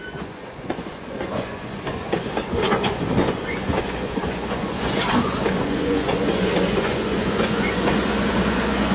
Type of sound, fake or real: fake